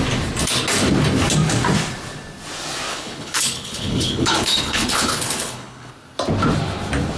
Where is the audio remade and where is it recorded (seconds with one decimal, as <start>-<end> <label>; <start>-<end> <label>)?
0.0-2.9 recorded; 2.9-5.9 remade; 5.9-7.2 recorded